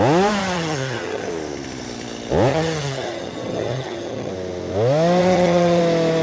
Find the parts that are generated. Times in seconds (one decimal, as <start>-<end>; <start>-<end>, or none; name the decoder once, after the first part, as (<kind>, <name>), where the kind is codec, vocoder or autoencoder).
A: 0.4-1.3 (vocoder, HiFi-GAN); 2.5-4.3; 5.2-5.8